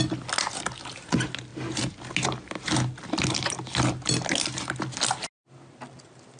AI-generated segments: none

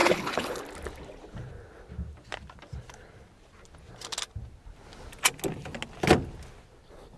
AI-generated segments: 0.0-0.6 (codec, HILCodec)

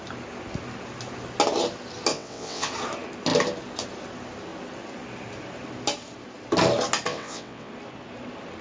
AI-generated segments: 2.1-2.7 (vocoder, WaveNeXt); 7.1-7.7